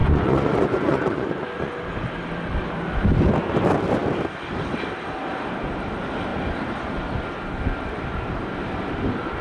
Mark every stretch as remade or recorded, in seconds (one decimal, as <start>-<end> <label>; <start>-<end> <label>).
0.0-1.7 remade; 1.7-9.4 recorded